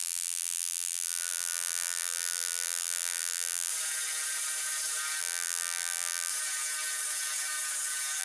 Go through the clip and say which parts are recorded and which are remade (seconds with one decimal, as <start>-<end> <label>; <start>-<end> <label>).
0.0-3.7 remade; 3.7-5.2 recorded; 5.2-6.3 remade; 6.3-8.2 recorded